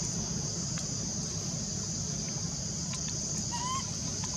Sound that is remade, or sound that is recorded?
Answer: recorded